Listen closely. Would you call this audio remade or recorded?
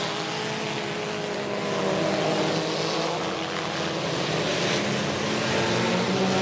recorded